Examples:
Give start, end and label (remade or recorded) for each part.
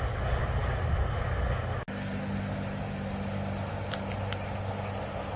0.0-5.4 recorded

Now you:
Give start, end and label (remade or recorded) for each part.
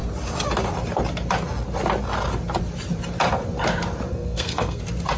0.0-4.1 recorded; 4.1-4.8 remade; 4.8-5.2 recorded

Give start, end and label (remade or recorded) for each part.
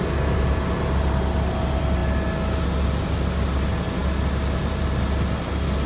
0.0-5.9 recorded